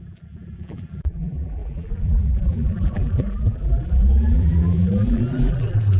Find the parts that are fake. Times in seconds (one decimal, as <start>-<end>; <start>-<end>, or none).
0.0-6.0